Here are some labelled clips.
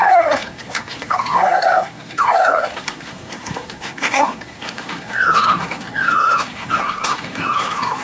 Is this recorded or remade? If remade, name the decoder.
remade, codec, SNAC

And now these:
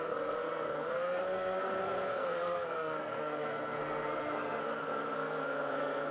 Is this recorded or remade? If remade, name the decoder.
remade, codec, SNAC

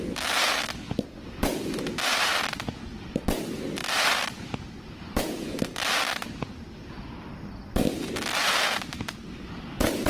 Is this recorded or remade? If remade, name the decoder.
recorded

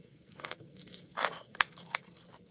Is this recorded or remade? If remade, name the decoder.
remade, codec, SNAC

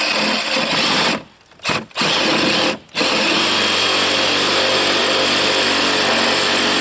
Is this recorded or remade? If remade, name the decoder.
recorded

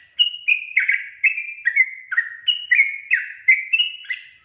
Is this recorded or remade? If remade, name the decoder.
recorded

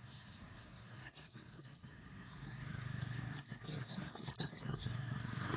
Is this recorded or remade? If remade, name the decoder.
remade, codec, SNAC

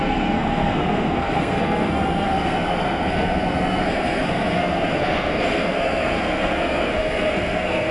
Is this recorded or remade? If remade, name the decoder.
remade, codec, SNAC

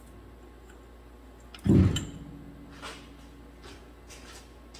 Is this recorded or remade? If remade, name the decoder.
recorded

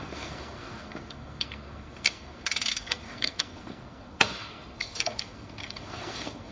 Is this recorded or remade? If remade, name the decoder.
remade, codec, SNAC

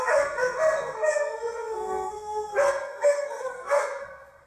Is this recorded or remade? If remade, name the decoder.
remade, codec, SNAC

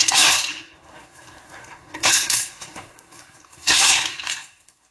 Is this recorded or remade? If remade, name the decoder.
remade, codec, SNAC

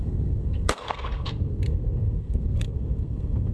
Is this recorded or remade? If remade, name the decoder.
remade, codec, SNAC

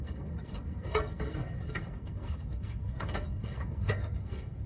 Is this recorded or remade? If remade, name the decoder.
remade, codec, SNAC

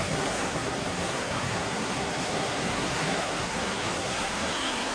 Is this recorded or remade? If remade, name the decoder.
remade, codec, SNAC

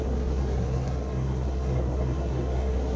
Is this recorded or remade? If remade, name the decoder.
remade, codec, SNAC